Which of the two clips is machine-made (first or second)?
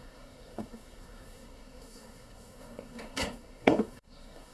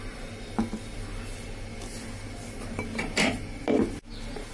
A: first